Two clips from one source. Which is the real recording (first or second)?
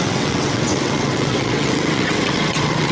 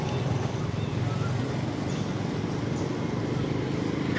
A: second